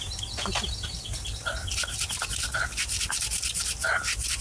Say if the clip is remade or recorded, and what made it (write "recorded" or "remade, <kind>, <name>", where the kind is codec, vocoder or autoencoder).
recorded